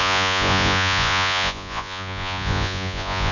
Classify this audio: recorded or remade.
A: remade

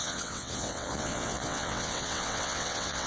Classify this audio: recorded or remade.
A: remade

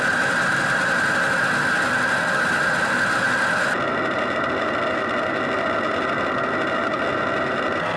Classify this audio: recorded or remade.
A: recorded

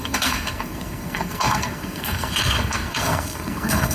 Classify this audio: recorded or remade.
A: remade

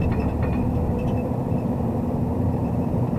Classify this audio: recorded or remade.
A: remade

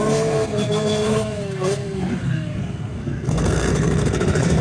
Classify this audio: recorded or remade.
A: remade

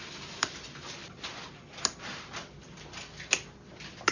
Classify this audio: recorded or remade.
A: recorded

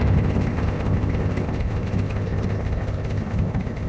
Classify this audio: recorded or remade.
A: remade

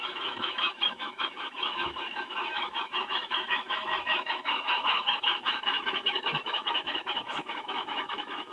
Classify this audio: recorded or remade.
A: remade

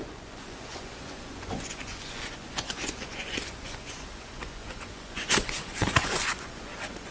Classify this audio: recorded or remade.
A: remade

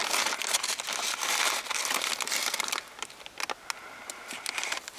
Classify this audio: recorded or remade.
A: recorded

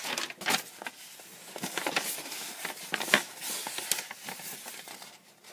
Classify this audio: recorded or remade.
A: recorded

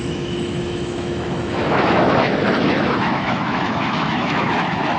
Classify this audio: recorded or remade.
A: remade